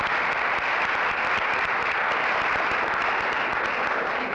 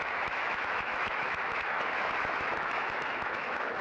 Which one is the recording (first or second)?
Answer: first